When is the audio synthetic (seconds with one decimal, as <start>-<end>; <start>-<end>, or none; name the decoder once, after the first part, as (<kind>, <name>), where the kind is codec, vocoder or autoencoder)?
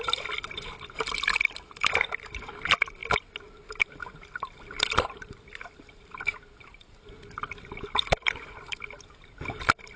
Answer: none